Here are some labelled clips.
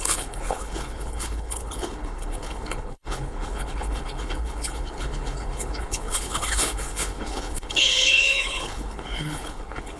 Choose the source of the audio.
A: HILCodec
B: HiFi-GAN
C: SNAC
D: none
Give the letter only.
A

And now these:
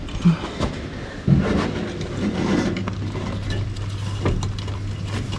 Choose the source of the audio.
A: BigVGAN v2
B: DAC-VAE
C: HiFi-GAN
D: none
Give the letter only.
D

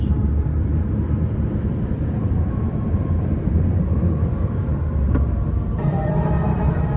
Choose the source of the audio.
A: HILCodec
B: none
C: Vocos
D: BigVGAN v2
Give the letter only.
D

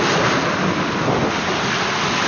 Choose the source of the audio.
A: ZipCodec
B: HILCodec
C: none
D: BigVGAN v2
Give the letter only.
C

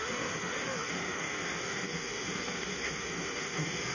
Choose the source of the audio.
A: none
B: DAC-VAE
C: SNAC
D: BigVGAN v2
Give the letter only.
B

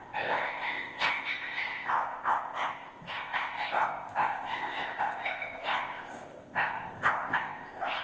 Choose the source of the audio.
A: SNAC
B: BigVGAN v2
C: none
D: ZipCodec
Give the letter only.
D